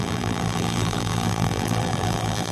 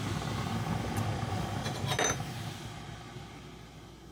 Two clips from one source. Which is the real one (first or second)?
second